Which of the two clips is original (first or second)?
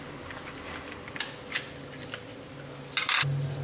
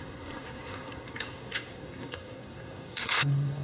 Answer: first